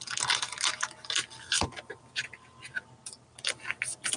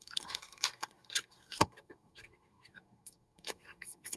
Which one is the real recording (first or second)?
first